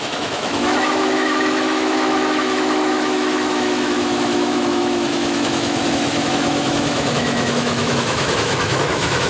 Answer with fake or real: fake